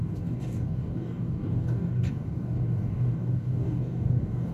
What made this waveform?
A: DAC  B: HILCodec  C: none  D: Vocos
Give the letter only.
A